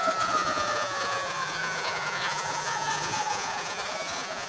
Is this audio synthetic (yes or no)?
yes